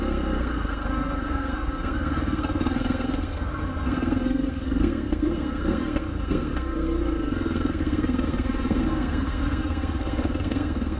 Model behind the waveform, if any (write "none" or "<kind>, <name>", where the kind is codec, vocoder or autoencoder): codec, SNAC